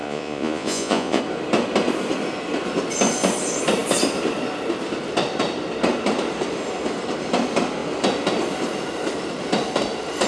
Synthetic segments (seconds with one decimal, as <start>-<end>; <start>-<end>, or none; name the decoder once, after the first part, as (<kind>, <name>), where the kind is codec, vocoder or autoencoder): 0.0-1.2 (vocoder, Vocos)